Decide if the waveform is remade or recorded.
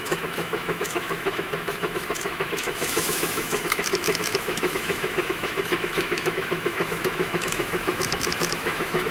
remade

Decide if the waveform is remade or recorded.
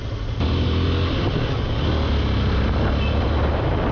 recorded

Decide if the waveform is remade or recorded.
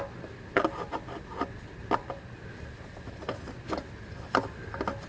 recorded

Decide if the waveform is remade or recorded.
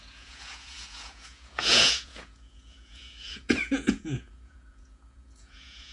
remade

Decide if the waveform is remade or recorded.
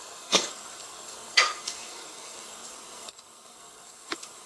remade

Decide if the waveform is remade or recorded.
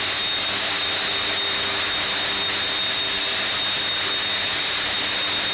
recorded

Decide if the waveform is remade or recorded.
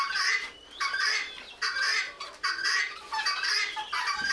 recorded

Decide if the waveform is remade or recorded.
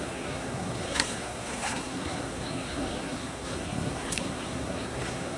remade